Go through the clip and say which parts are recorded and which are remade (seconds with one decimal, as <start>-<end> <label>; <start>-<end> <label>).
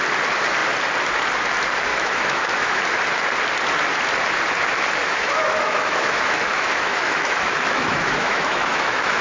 0.0-1.9 recorded; 1.9-2.8 remade; 2.8-5.0 recorded; 5.0-9.2 remade